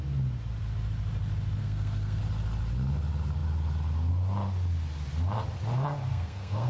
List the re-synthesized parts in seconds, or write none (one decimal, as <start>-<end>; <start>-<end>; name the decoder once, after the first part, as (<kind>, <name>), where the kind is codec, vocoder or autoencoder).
1.6-2.2 (codec, SNAC); 6.1-6.7